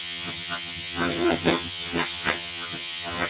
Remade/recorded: remade